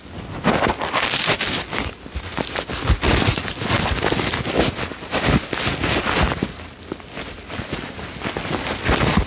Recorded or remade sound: recorded